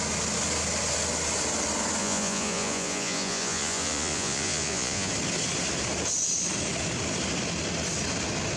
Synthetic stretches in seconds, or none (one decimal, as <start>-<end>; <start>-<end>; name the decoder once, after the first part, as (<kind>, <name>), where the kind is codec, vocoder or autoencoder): 2.0-5.1 (vocoder, Vocos)